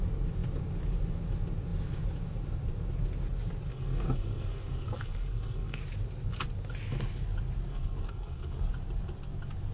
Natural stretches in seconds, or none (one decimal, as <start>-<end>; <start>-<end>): 0.0-3.7; 5.8-7.7; 8.7-9.7